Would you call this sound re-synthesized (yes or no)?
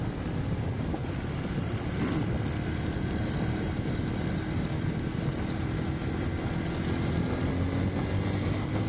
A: no